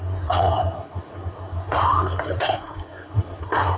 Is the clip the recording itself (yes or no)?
no